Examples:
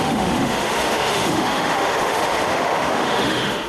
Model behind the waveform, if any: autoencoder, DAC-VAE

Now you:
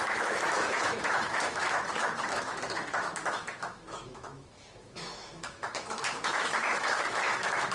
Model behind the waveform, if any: autoencoder, DAC-VAE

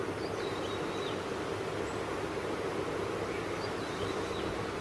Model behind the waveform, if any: none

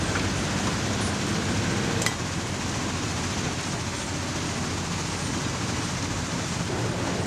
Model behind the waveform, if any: none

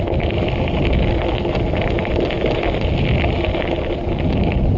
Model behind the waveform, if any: none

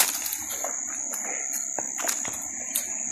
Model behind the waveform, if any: none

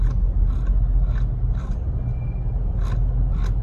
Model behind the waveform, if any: none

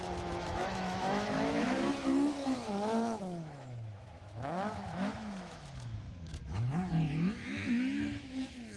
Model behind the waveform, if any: autoencoder, DAC-VAE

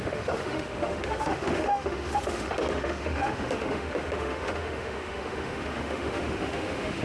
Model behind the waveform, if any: autoencoder, DAC-VAE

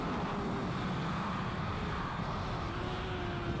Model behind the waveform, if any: none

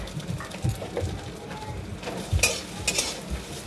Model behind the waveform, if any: none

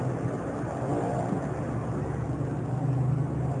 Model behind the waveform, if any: none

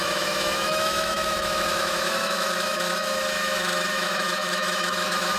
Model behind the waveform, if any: autoencoder, DAC-VAE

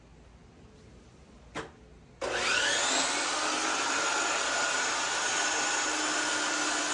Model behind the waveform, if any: none